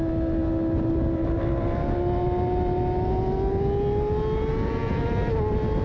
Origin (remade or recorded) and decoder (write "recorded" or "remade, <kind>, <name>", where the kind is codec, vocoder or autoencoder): recorded